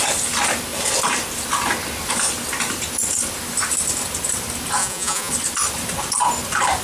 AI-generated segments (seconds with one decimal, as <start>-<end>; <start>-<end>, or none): 4.8-5.3